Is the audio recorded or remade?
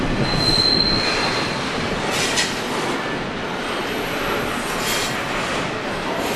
recorded